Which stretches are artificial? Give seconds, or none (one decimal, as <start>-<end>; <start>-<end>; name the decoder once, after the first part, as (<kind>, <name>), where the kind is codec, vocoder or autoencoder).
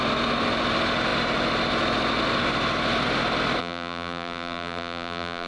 3.6-5.5 (vocoder, BigVGAN v2)